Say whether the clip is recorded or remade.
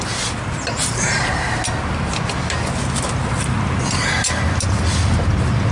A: recorded